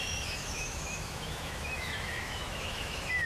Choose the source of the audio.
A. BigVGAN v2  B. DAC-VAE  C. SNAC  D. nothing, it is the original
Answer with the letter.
B